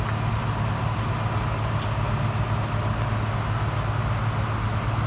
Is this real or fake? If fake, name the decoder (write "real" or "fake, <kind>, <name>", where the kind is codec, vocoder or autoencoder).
real